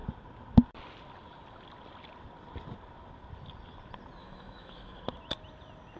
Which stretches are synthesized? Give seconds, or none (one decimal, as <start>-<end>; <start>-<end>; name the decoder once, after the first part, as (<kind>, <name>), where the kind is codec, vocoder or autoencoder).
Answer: 4.2-5.0 (autoencoder, DAC-VAE)